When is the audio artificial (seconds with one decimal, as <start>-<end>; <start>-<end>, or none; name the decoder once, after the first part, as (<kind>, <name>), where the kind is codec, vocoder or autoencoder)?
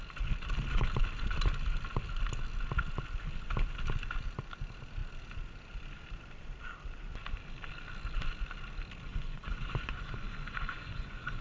9.1-11.4 (vocoder, Vocos)